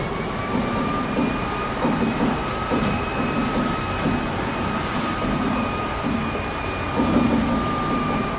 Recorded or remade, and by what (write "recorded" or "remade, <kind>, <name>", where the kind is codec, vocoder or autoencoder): remade, vocoder, BigVGAN v2